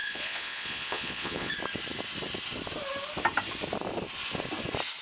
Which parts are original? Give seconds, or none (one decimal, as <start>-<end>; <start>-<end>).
1.5-5.0